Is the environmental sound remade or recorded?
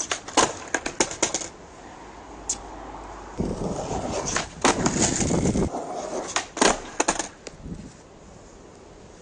recorded